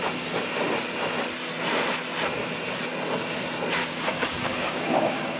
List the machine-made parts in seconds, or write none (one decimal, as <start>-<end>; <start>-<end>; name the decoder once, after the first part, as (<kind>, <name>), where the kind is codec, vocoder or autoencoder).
3.8-5.4 (codec, DAC)